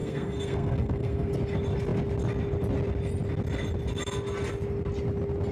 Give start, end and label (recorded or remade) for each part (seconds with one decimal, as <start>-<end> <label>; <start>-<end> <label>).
0.0-1.3 remade; 1.3-5.5 recorded